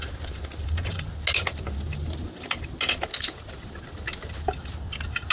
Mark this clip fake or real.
real